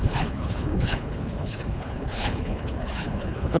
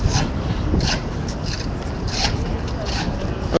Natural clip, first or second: second